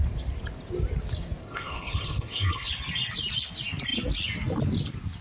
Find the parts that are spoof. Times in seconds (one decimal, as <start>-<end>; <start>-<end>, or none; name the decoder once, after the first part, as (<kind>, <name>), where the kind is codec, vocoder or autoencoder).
1.4-2.7 (codec, HILCodec)